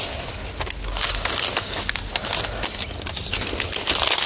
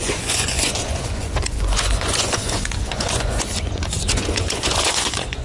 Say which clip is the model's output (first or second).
second